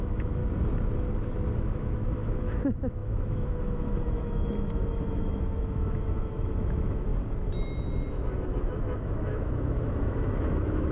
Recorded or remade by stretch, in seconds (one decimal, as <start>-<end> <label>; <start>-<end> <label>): 0.0-0.4 remade; 0.4-1.6 recorded; 1.6-7.1 remade; 7.1-8.1 recorded; 8.1-10.9 remade